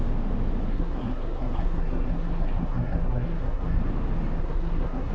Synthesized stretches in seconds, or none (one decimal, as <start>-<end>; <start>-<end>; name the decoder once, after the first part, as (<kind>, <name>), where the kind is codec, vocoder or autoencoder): 0.7-3.8 (codec, SNAC); 4.4-5.1